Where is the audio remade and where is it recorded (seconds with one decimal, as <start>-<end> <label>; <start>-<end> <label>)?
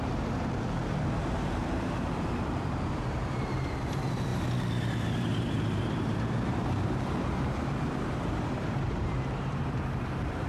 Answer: 0.0-10.5 remade